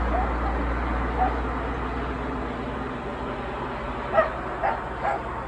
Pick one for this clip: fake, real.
real